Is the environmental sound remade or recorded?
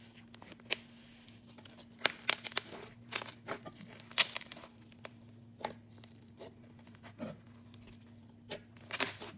recorded